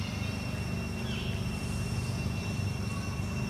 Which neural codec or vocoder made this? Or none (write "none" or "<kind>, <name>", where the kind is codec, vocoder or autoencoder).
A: none